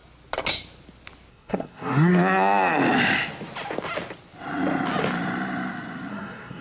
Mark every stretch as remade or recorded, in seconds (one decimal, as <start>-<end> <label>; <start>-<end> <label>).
0.0-1.3 recorded; 1.3-2.1 remade; 2.1-6.1 recorded; 6.1-6.6 remade